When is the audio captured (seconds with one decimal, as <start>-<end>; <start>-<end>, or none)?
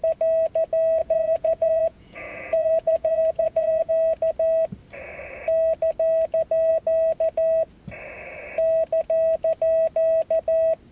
0.0-1.0; 3.9-10.9